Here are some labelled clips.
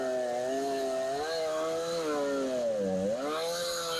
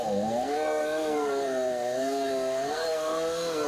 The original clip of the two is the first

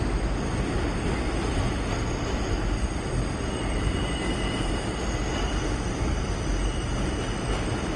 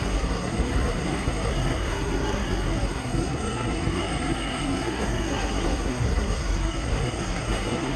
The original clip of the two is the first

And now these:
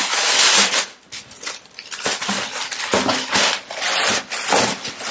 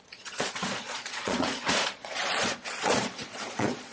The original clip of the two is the first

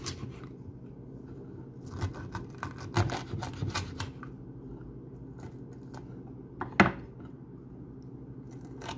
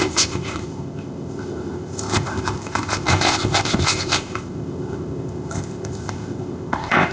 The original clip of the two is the first